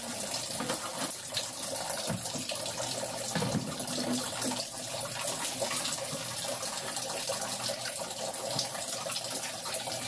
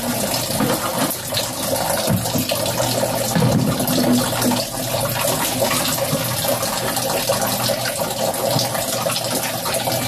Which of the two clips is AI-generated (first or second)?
first